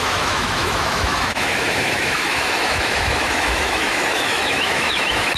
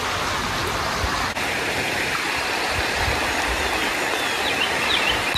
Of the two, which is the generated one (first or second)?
first